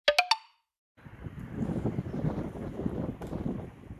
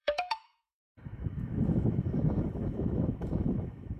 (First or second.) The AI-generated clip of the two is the second